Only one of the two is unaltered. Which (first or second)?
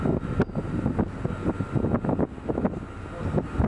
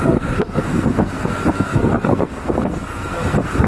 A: first